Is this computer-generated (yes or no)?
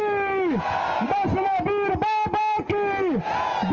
no